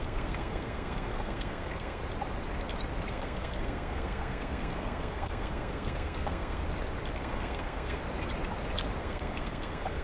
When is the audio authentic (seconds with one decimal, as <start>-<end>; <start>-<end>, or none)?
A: 2.0-3.1; 6.6-7.2; 8.0-9.0